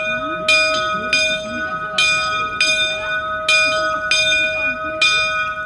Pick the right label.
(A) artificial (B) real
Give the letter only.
B